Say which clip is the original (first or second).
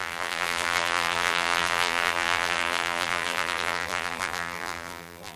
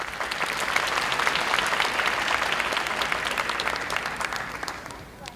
second